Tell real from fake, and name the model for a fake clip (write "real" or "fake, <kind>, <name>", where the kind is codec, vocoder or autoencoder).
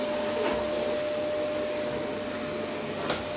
real